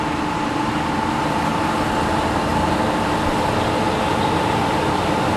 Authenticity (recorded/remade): recorded